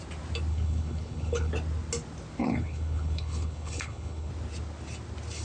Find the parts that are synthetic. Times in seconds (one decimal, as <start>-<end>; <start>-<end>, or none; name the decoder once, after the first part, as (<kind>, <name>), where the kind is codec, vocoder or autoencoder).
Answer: 0.5-1.5 (codec, HILCodec); 2.4-4.3